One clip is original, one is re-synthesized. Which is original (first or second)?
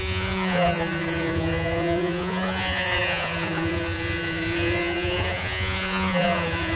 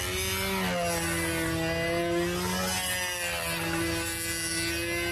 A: second